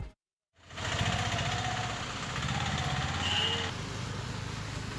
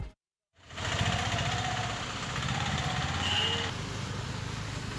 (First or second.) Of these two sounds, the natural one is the first